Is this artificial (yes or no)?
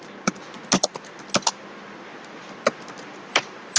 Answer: no